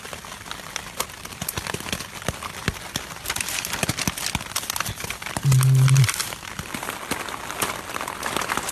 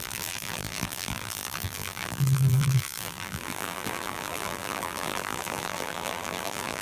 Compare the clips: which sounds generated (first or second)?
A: second